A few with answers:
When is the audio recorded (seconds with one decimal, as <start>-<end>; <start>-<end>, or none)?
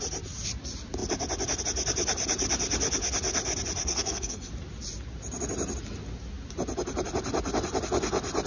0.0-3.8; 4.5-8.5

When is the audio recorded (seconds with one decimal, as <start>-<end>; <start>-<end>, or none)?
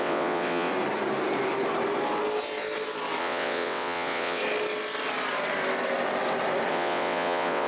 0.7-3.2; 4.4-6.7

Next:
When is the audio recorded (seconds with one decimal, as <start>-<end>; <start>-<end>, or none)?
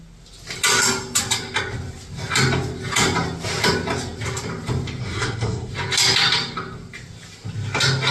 0.0-5.0; 5.7-8.1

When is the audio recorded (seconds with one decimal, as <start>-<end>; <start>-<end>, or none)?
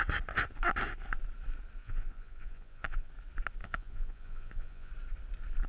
0.0-1.8; 3.1-3.6; 4.9-5.7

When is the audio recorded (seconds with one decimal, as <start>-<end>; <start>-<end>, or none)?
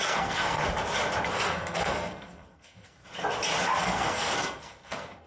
0.6-1.3; 3.0-3.8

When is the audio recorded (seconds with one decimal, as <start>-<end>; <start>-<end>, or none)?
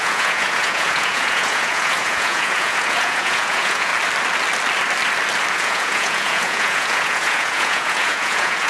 3.9-5.5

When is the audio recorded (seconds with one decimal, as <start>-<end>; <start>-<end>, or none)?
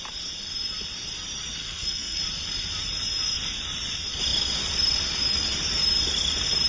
0.0-1.6; 2.2-6.7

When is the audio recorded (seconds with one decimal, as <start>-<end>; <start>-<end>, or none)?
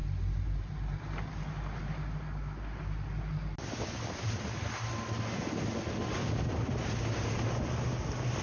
0.0-8.4